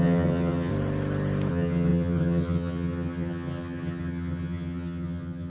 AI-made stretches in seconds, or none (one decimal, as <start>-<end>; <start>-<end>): 0.0-0.7; 1.5-5.5